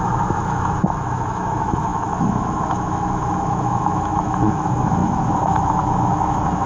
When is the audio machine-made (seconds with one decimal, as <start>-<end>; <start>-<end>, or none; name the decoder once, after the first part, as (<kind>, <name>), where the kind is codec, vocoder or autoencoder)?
0.0-6.7 (autoencoder, DAC-VAE)